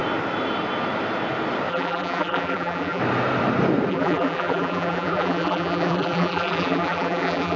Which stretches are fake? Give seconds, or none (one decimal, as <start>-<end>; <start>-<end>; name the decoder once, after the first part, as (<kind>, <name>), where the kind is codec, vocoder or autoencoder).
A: 1.7-3.0 (vocoder, BigVGAN v2); 3.9-7.6